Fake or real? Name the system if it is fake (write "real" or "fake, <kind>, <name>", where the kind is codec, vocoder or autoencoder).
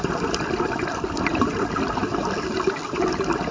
real